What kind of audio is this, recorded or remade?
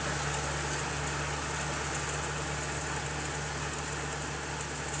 recorded